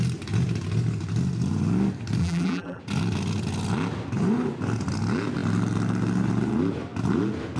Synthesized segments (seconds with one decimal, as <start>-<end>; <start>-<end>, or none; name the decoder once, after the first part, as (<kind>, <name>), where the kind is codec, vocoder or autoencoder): 2.2-2.8 (vocoder, BigVGAN v2)